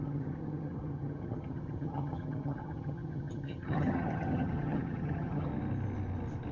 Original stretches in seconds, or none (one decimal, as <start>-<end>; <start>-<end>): 5.5-6.5